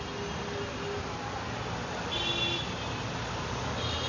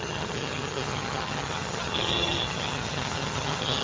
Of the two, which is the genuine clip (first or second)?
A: first